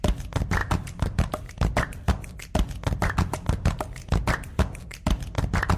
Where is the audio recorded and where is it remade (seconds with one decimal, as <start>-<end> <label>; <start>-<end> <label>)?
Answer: 0.0-0.6 recorded; 0.6-1.5 remade; 1.5-5.8 recorded